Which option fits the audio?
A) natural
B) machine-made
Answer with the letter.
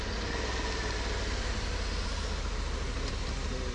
A